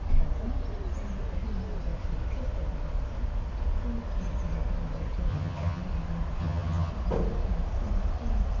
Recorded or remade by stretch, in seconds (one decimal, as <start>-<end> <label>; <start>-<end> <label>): 0.0-5.3 recorded; 5.3-5.8 remade; 5.8-6.4 recorded; 6.4-6.9 remade; 6.9-8.6 recorded